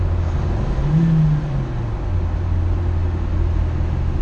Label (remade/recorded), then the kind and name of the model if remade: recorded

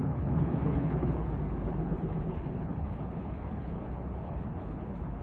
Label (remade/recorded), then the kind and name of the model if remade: remade, codec, HILCodec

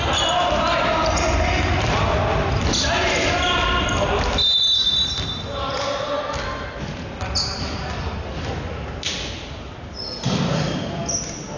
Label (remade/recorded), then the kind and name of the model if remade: recorded